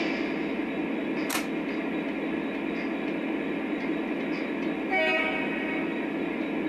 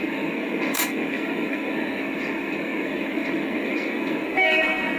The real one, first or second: first